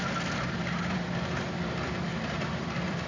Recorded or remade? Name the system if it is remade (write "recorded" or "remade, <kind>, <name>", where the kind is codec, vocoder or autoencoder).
remade, vocoder, BigVGAN v2